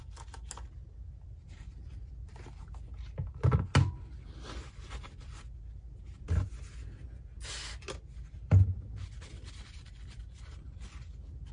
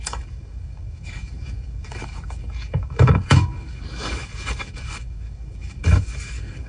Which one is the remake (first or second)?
second